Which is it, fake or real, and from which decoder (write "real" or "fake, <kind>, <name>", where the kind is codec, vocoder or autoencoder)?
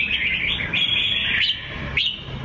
real